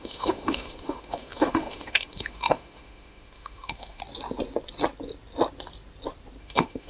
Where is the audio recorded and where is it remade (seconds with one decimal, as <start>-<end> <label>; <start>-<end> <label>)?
0.0-4.0 remade; 4.0-6.4 recorded; 6.4-6.9 remade